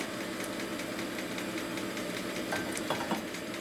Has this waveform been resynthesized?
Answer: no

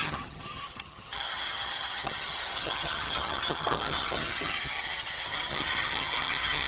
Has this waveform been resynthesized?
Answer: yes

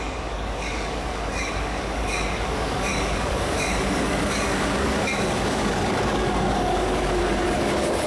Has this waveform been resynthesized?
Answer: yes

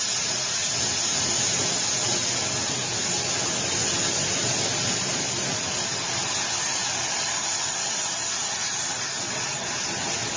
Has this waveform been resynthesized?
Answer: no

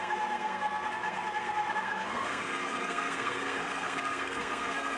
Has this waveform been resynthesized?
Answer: yes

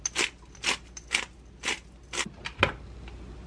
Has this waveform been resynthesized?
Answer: no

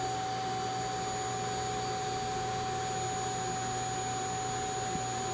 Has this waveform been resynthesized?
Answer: no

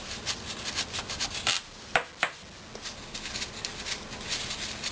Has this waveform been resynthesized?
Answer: no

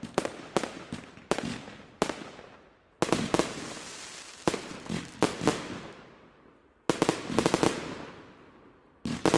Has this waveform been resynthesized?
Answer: no